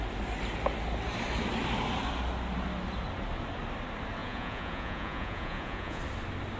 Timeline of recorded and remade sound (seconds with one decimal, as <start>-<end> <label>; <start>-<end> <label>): 0.0-4.2 recorded; 4.2-6.0 remade; 6.0-6.6 recorded